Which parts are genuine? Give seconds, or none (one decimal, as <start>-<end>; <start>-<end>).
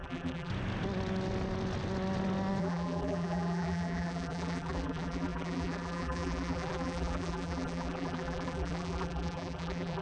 0.5-2.6